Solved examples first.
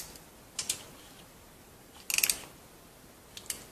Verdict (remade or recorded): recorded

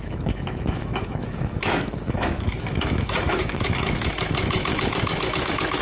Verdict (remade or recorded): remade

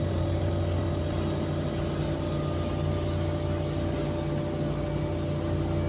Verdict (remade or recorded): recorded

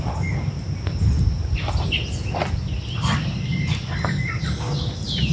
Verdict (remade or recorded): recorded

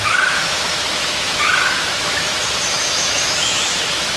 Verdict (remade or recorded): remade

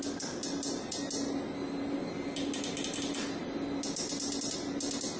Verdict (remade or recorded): recorded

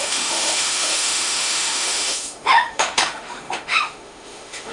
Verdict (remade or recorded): remade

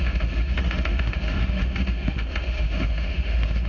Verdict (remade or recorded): remade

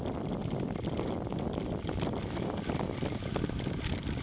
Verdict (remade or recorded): recorded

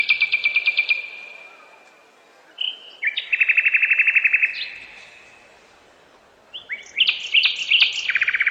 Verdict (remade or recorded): recorded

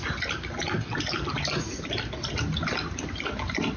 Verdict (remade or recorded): recorded